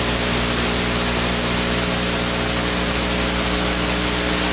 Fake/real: real